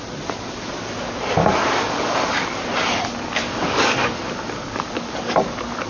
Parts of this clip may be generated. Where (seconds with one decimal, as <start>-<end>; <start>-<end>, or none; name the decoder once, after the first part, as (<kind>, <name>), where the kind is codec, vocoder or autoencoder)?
1.4-2.6 (codec, DAC); 3.4-5.9